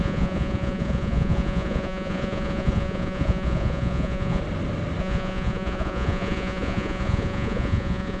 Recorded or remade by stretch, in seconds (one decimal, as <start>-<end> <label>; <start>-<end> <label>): 0.0-4.4 remade; 4.4-5.0 recorded; 5.0-8.2 remade